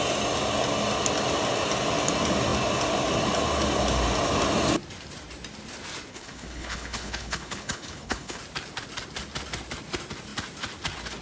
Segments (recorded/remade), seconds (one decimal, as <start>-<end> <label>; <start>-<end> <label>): 0.0-6.1 recorded; 6.1-8.4 remade; 8.4-11.2 recorded